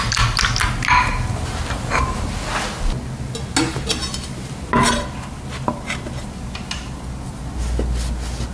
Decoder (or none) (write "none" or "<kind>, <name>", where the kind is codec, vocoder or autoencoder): none